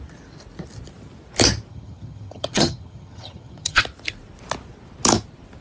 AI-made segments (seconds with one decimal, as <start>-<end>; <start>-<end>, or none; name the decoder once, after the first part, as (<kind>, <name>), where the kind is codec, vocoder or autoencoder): 1.7-3.8 (vocoder, HiFi-GAN)